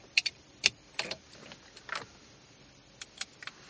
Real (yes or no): no